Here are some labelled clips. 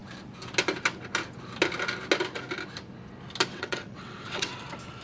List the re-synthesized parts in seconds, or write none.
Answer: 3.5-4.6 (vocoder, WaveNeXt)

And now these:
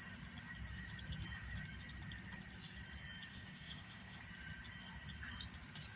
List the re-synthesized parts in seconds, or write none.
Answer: 3.3-4.2 (codec, DAC)

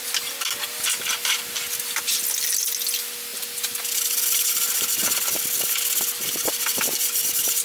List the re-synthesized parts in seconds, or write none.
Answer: none

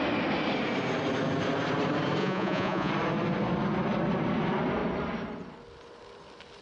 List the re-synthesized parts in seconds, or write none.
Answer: 2.2-2.9 (vocoder, Vocos)